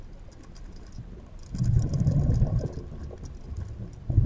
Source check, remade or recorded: recorded